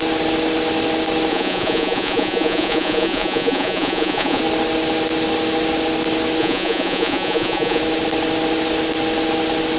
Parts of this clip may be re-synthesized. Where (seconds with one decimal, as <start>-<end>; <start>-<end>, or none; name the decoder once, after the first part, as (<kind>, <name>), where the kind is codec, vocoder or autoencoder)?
1.3-4.4 (vocoder, Vocos); 6.4-7.8